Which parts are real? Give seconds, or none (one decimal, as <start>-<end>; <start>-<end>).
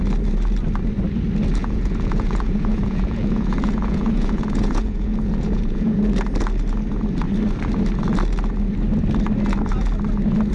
0.0-1.6; 6.1-10.5